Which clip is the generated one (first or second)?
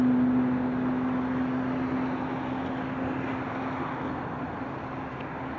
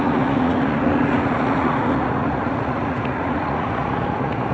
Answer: second